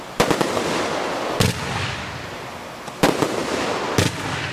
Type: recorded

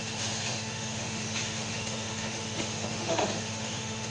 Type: remade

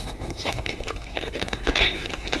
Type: remade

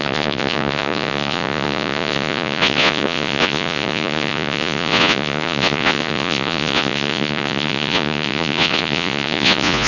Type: remade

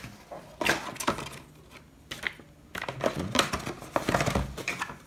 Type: recorded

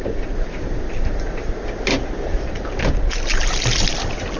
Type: recorded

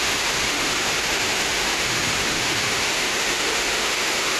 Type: remade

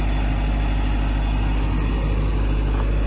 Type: recorded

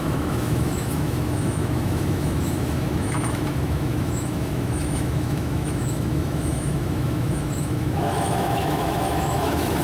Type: remade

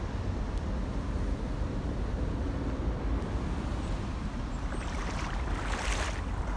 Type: recorded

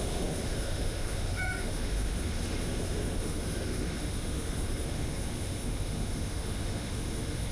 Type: remade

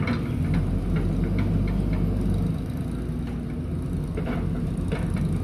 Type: recorded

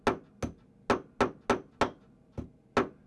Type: recorded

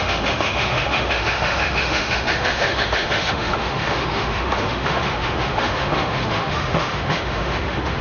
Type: remade